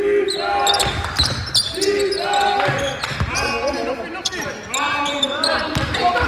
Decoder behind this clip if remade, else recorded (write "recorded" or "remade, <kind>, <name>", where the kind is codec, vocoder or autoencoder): recorded